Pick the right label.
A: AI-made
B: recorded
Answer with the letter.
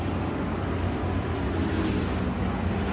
B